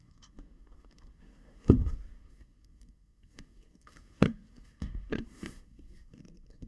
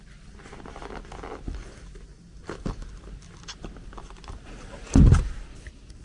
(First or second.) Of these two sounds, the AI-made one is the first